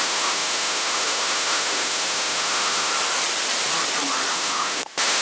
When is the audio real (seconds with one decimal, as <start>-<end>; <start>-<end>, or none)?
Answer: 2.9-4.3